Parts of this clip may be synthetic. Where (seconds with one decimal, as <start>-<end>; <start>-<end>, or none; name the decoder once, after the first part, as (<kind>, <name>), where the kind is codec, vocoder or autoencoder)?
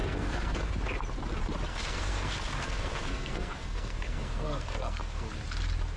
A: 0.0-0.7 (codec, SNAC); 1.7-5.3